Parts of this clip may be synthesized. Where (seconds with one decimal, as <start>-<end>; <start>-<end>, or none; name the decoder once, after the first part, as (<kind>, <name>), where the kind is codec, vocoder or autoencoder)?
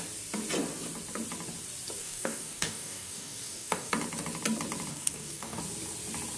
2.0-3.9 (codec, DAC); 4.9-5.6